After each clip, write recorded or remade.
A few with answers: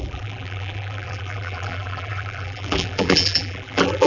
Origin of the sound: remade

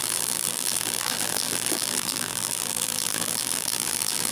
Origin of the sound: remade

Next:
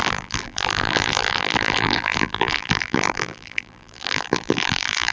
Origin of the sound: remade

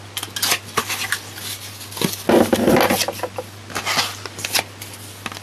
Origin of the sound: recorded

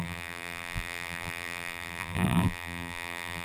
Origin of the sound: remade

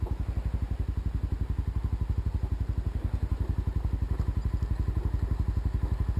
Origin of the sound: recorded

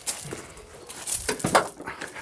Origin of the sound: recorded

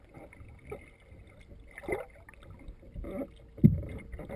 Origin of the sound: recorded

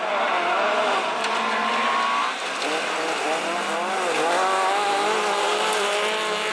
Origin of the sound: recorded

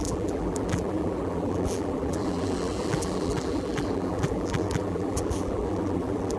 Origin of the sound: remade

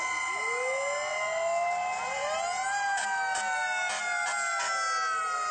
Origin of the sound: recorded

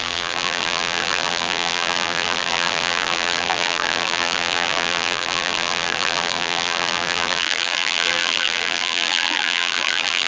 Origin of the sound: remade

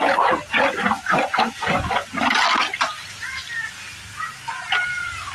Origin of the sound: recorded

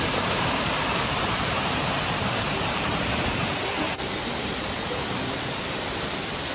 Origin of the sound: remade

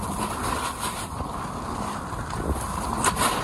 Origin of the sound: recorded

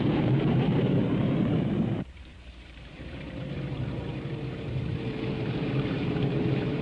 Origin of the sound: remade